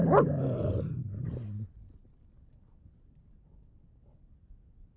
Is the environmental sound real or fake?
real